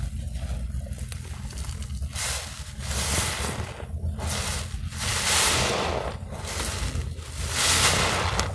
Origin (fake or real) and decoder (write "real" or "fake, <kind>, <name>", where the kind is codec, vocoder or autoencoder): real